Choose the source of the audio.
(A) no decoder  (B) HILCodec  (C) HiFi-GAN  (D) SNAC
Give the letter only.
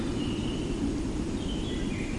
A